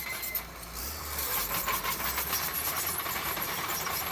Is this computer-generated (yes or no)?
yes